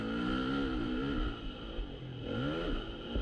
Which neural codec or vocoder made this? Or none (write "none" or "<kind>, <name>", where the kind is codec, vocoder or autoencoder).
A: none